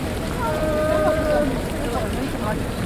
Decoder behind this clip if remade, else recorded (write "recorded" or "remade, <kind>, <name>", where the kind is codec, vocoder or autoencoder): remade, vocoder, BigVGAN v2